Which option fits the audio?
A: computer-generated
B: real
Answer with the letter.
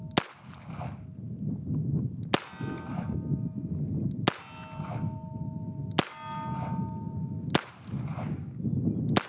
B